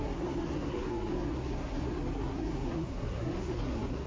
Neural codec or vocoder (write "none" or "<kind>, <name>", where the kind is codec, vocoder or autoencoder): codec, SNAC